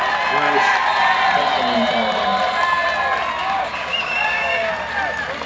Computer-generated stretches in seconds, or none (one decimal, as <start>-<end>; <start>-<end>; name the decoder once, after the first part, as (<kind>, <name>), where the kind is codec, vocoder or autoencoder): 3.4-4.7 (codec, DAC)